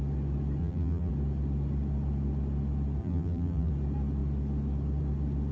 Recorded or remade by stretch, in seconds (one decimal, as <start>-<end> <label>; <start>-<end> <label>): 0.0-0.6 recorded; 0.6-1.1 remade; 1.1-3.0 recorded; 3.0-3.7 remade; 3.7-5.5 recorded